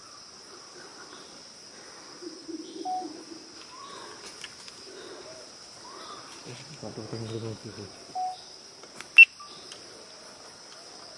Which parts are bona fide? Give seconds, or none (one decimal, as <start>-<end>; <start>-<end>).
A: 0.0-11.2